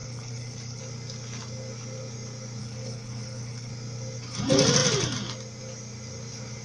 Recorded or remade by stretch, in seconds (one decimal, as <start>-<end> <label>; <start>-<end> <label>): 0.0-0.8 remade; 0.8-2.6 recorded; 2.6-3.7 remade; 3.7-6.6 recorded